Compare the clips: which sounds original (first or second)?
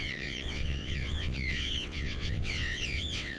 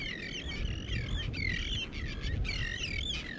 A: second